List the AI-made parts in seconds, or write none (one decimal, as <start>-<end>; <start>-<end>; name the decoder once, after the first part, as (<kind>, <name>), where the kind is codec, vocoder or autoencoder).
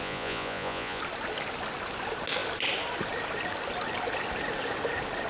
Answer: 0.0-1.0 (vocoder, Vocos)